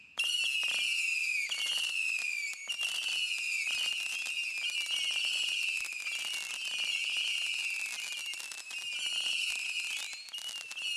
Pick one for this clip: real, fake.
real